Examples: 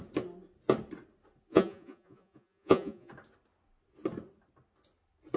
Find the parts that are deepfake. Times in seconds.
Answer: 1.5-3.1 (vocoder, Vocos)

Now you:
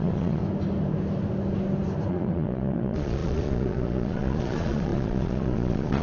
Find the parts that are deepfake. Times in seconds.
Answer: 0.0-0.4 (vocoder, Vocos); 2.1-6.0

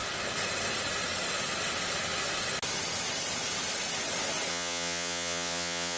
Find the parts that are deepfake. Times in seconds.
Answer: 4.5-6.0 (vocoder, Vocos)